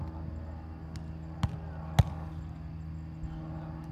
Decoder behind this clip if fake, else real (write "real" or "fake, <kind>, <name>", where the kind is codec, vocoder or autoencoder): real